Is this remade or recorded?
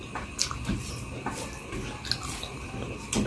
recorded